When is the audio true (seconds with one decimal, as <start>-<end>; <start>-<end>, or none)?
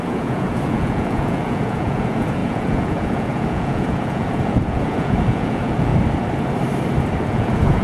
5.9-7.2